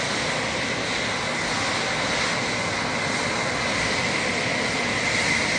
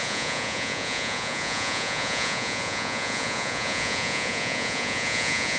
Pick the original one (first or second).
first